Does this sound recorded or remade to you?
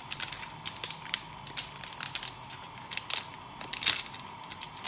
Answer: recorded